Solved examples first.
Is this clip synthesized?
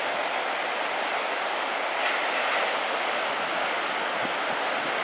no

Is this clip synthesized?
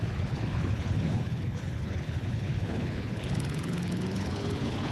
yes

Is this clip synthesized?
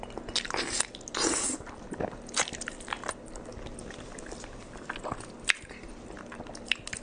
no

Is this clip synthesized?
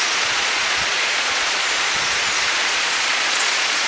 yes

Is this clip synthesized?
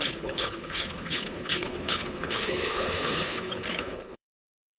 yes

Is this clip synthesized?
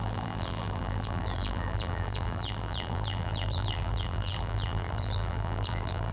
yes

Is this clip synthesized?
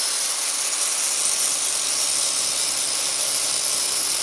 no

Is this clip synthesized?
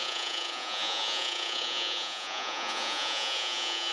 yes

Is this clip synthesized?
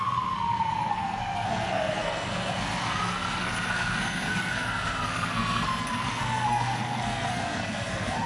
yes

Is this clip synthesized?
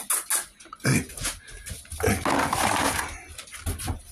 no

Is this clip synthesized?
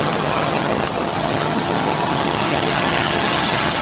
yes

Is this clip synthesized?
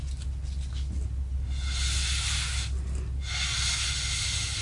no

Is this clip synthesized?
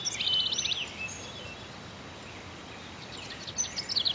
no